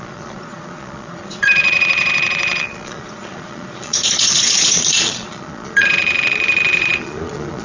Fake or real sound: fake